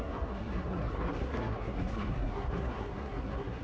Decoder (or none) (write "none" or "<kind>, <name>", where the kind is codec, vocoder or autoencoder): codec, SNAC